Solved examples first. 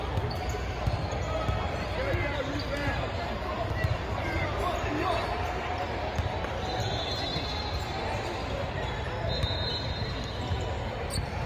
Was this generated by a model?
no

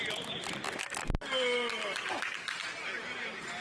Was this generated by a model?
no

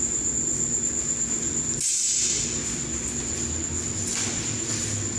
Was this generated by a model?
no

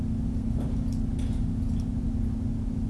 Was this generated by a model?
no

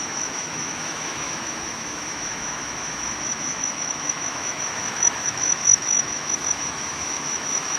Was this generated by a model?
yes